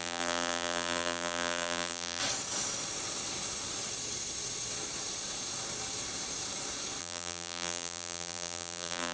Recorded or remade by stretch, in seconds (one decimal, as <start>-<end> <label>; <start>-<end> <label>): 0.0-2.2 remade; 2.2-7.0 recorded; 7.0-9.1 remade